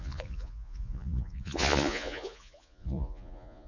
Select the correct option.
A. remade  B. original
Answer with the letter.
A